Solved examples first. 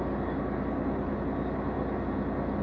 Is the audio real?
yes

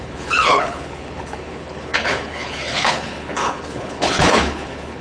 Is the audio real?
no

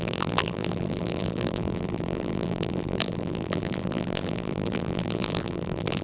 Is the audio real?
no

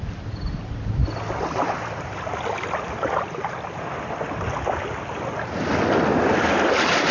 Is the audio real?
yes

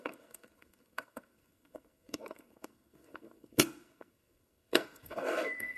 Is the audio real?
no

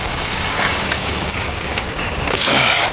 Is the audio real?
no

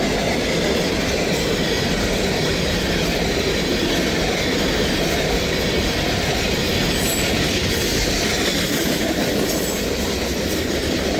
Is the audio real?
yes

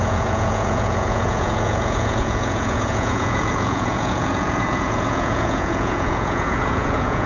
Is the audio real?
no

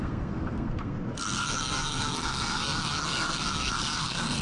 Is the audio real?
no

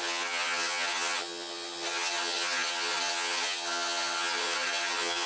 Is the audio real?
no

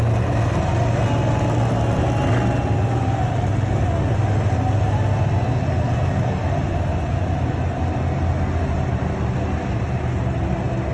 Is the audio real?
yes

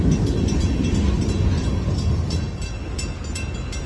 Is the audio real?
yes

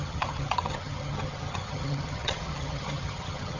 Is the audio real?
no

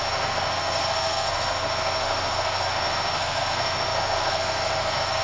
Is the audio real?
no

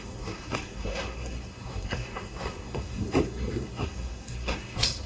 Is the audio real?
no